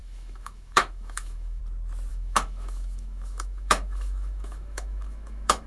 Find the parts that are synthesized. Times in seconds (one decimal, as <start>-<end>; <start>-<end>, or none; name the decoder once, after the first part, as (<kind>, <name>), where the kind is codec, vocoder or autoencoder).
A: 0.0-1.6 (autoencoder, DAC-VAE); 2.1-5.7